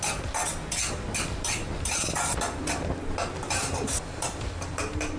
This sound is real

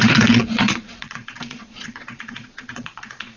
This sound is fake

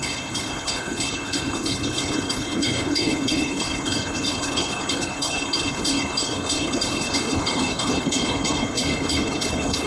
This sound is fake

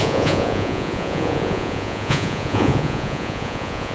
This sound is fake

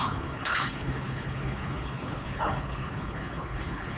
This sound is fake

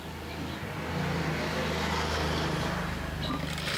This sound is real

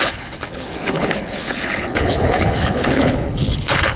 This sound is fake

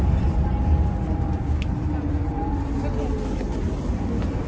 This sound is real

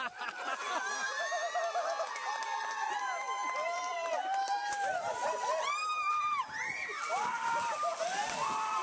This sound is fake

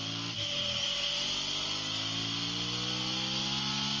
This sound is real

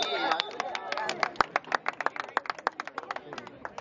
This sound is real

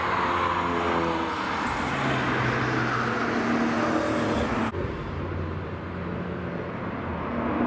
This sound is real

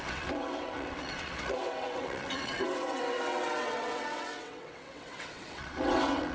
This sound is fake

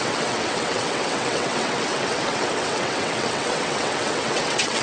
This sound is fake